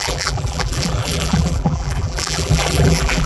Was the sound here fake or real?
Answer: fake